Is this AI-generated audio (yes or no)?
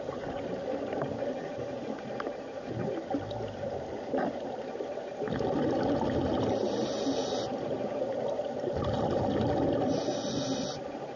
no